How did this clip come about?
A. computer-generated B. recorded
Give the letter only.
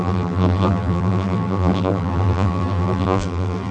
A